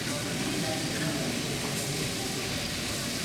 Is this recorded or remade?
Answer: recorded